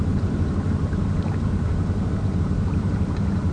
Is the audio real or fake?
fake